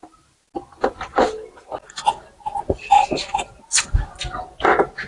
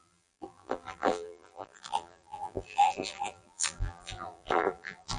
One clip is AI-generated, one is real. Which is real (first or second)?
first